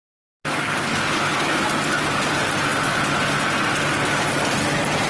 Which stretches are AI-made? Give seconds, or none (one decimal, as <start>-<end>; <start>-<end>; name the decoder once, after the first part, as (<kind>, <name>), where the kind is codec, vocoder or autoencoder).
none